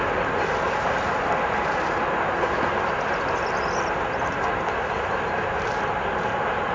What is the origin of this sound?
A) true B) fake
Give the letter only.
A